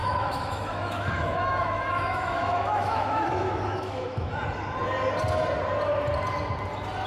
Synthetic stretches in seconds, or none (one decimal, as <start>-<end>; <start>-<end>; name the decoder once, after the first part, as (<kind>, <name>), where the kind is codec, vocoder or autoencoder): 0.0-4.3 (autoencoder, DAC-VAE)